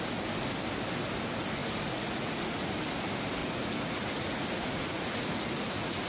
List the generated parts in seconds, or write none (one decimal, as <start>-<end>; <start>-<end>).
1.6-2.7; 3.4-6.1